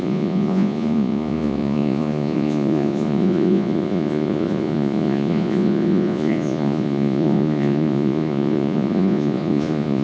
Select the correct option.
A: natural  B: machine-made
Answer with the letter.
B